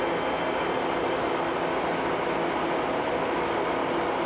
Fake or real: real